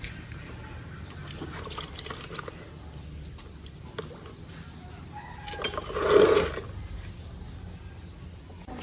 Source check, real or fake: real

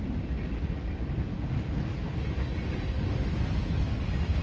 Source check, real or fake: real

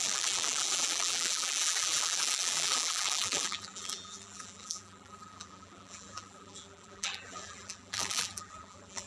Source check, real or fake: fake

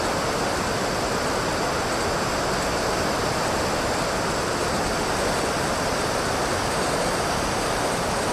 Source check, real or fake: real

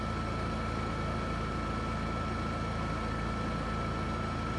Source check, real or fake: real